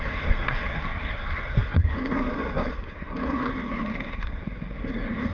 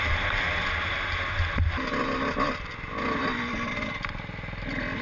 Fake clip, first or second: first